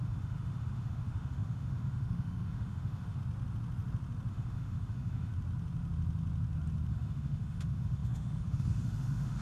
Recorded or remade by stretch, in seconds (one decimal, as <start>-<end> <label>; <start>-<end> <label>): 0.0-3.2 remade; 3.2-4.3 recorded; 4.3-5.3 remade; 5.3-6.9 recorded; 6.9-9.4 remade